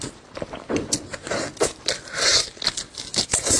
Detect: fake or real fake